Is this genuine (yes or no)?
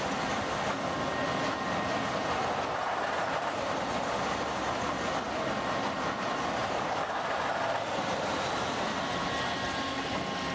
yes